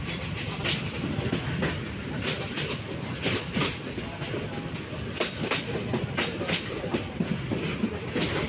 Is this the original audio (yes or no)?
yes